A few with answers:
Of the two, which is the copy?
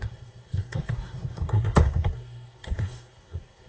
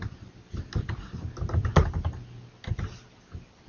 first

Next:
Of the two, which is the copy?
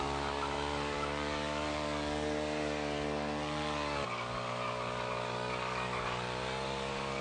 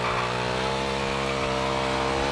first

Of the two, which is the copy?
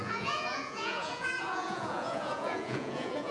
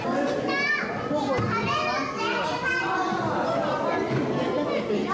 first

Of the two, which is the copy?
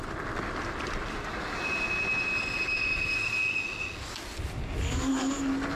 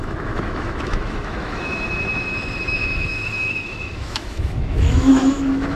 second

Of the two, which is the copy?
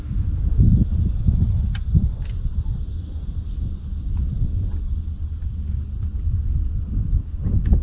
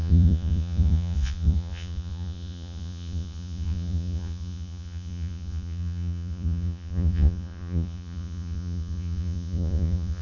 second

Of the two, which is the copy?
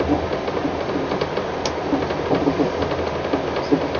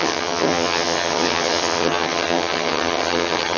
second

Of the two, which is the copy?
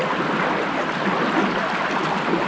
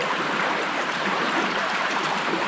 second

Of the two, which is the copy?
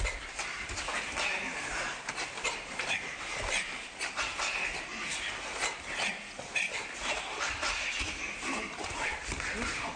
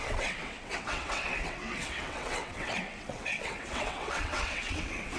second